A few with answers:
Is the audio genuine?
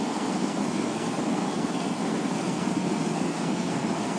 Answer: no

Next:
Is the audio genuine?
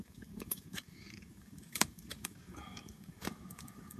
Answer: no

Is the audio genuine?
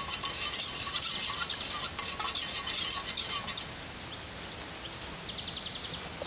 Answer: yes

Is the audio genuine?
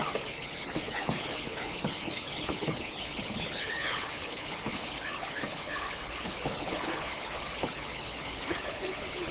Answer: no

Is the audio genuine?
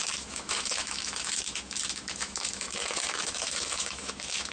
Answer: no